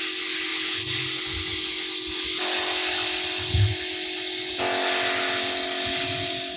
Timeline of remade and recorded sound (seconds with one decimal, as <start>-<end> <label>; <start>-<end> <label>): 0.0-6.6 recorded